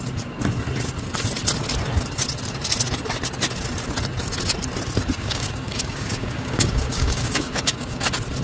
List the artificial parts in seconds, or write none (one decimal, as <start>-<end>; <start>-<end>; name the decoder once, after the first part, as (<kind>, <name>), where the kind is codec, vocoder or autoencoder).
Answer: 5.0-8.0 (codec, DAC)